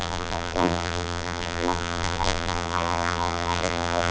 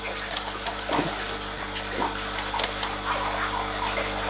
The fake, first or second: first